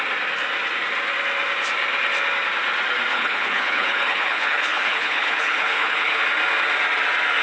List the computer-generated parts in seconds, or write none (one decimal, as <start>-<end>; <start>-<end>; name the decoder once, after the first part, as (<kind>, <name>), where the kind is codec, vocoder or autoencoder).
3.1-6.2 (codec, HILCodec)